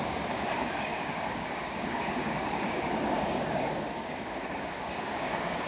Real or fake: fake